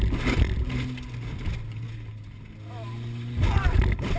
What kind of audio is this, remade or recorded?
recorded